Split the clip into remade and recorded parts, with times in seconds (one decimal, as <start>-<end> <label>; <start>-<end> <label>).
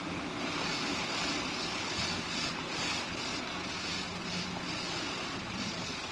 0.0-6.1 recorded